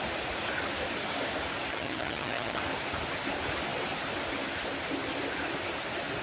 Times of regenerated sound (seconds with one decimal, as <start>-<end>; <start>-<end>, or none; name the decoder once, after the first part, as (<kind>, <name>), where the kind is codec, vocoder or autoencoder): 1.7-2.6 (vocoder, HiFi-GAN)